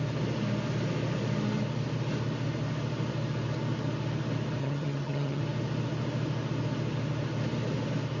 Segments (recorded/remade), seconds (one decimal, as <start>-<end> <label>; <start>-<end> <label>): 0.0-4.6 recorded; 4.6-5.4 remade; 5.4-8.2 recorded

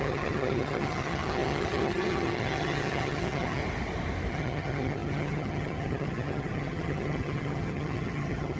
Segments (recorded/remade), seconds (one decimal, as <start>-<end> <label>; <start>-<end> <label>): 0.0-3.6 remade; 3.6-4.3 recorded; 4.3-8.6 remade